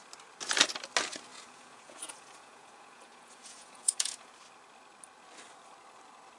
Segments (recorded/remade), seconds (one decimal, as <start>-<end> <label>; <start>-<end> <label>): 0.0-1.3 recorded; 1.3-4.3 remade; 4.3-6.4 recorded